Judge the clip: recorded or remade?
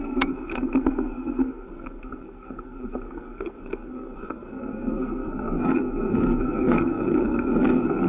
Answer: remade